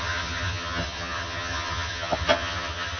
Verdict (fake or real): fake